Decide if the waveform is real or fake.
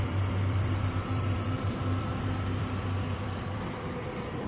fake